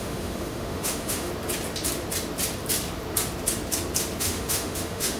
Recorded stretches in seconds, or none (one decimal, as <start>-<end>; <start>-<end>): 1.3-4.2